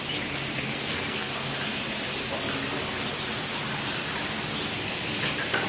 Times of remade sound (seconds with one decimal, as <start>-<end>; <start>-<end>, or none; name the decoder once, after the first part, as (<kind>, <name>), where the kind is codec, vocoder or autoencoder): 0.5-1.3 (codec, SNAC)

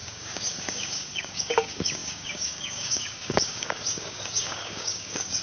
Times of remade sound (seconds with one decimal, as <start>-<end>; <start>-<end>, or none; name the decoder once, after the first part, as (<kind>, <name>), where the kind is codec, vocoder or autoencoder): 0.0-5.4 (codec, DAC)

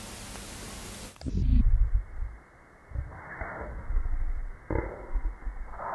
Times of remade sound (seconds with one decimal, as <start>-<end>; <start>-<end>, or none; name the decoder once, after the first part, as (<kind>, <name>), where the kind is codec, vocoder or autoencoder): none

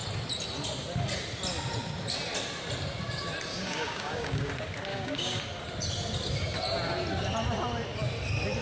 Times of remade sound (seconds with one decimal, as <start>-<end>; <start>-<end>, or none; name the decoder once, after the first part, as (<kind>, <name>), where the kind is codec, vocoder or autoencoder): 3.5-4.5 (codec, DAC); 4.9-5.4

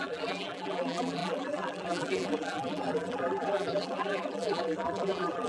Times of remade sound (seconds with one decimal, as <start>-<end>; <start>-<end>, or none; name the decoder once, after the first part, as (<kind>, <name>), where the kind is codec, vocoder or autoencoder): 0.0-5.5 (vocoder, BigVGAN v2)

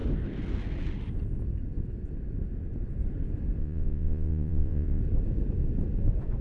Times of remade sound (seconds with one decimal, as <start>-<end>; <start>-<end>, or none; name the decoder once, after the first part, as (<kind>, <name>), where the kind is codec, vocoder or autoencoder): 3.6-5.0 (vocoder, Vocos)